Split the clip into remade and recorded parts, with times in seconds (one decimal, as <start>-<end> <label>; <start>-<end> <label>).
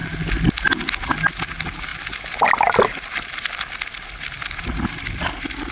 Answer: 0.0-5.7 recorded